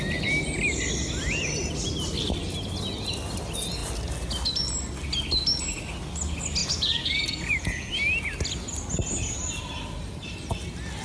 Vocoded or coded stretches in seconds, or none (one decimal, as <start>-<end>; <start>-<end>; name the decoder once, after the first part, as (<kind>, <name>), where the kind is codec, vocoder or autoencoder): 6.6-7.9 (vocoder, Vocos)